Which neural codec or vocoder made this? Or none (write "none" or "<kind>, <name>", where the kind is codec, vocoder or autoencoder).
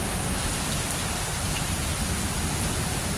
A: none